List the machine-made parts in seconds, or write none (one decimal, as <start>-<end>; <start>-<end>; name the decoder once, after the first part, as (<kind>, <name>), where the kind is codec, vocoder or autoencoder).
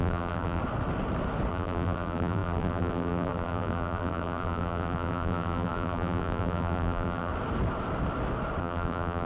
0.0-0.6 (vocoder, BigVGAN v2); 1.5-7.3; 8.6-9.3